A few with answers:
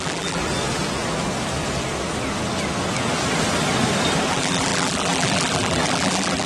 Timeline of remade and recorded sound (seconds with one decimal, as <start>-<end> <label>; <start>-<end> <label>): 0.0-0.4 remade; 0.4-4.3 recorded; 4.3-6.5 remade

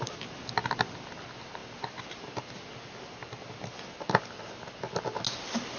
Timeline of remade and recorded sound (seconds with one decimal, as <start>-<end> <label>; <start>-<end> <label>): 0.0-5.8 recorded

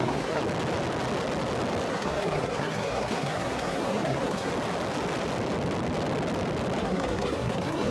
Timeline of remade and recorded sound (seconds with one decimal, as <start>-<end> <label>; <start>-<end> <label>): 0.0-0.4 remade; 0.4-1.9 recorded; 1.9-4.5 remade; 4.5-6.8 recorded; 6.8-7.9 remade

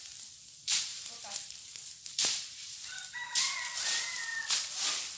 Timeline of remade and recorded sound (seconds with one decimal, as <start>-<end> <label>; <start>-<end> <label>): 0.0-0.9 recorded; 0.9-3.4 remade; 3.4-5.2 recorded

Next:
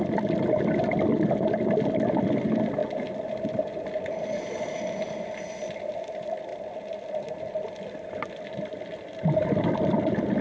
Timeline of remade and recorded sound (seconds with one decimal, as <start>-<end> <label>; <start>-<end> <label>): 0.0-10.4 recorded

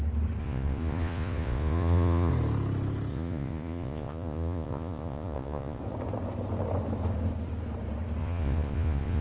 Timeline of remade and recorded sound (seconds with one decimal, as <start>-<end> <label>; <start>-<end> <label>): 0.0-0.4 recorded; 0.4-2.3 remade; 2.3-3.1 recorded; 3.1-5.8 remade; 5.8-8.2 recorded; 8.2-9.2 remade